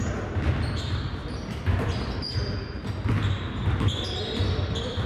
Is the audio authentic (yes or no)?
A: yes